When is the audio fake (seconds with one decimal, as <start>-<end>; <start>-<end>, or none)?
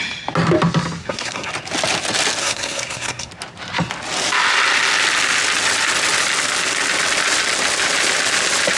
1.0-1.5; 2.4-3.3